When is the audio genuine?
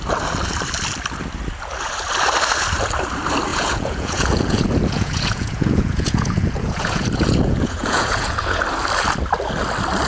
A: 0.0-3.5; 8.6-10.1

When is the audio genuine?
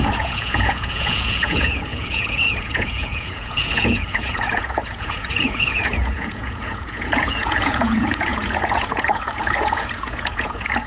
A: none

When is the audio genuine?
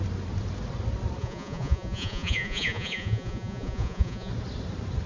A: 0.0-1.2; 4.3-5.1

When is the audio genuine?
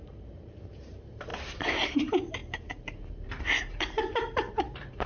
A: none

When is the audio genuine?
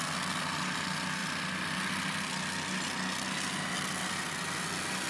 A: 0.0-5.1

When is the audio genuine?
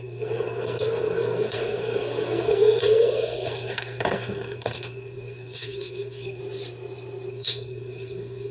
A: 6.4-7.3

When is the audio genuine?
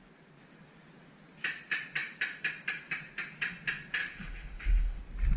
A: 0.0-4.0; 5.0-5.4